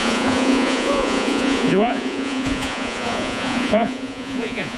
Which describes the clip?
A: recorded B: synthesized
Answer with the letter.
B